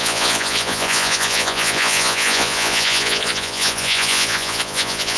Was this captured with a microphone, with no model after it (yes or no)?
no